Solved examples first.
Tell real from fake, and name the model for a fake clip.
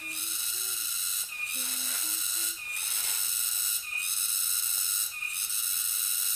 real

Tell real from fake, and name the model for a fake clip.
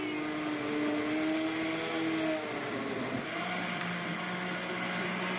real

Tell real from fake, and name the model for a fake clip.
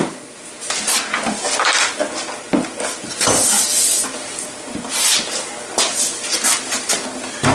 real